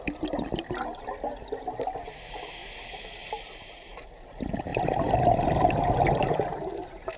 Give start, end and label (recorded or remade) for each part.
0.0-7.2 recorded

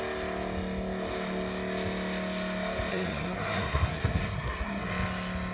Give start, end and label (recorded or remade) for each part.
0.0-2.9 recorded; 2.9-4.9 remade; 4.9-5.5 recorded

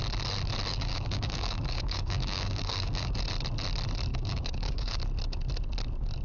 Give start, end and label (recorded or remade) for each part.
0.0-0.7 recorded; 0.7-3.2 remade; 3.2-4.1 recorded; 4.1-5.0 remade; 5.0-6.2 recorded

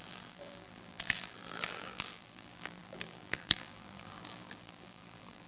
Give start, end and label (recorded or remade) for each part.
0.0-5.5 remade

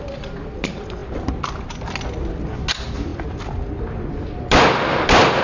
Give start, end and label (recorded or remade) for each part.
0.0-5.4 recorded

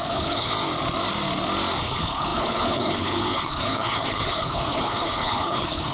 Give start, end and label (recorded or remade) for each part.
0.0-0.5 remade; 0.5-1.8 recorded; 1.8-5.9 remade

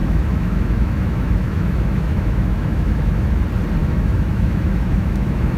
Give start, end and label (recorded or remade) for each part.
0.0-3.4 remade; 3.4-3.8 recorded; 3.8-5.6 remade